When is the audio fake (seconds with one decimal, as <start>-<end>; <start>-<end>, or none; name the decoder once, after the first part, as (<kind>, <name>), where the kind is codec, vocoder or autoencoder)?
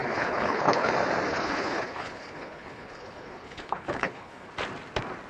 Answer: 0.0-0.9 (codec, HILCodec); 1.3-4.5